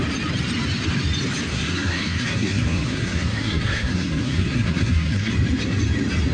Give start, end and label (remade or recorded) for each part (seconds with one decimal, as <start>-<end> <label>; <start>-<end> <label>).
0.0-1.5 recorded; 1.5-5.3 remade; 5.3-6.3 recorded